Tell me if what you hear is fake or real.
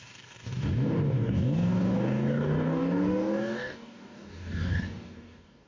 fake